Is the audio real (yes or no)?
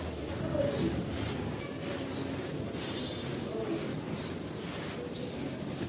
yes